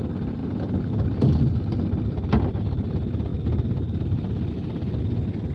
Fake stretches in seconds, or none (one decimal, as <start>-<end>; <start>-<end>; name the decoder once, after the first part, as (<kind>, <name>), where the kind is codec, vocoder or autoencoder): none